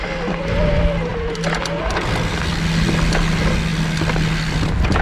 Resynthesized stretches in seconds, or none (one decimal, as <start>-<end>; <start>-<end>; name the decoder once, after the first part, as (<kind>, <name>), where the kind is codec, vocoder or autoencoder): none